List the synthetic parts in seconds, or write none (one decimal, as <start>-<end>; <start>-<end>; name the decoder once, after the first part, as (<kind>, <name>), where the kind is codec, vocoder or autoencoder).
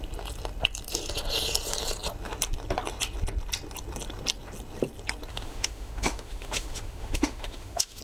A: 5.3-8.0 (autoencoder, DAC-VAE)